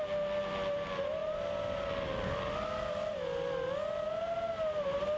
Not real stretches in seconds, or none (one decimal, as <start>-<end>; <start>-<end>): none